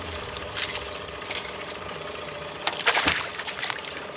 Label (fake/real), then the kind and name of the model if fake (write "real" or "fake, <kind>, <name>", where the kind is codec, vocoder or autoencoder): fake, vocoder, BigVGAN v2